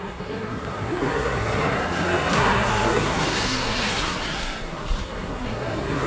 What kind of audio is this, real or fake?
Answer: fake